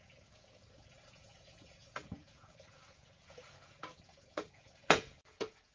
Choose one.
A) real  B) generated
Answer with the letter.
B